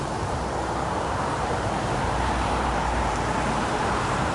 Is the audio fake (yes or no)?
yes